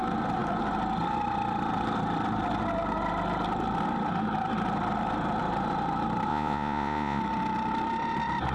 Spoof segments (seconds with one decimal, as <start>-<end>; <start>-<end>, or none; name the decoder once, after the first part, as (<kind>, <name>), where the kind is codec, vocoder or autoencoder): 6.3-7.2 (vocoder, Vocos)